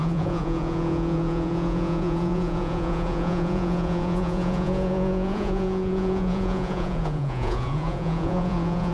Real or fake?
fake